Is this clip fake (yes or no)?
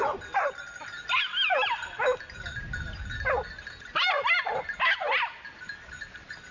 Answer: no